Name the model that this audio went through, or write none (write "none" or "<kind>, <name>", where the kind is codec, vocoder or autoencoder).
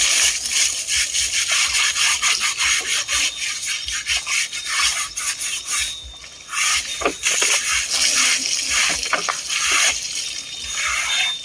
none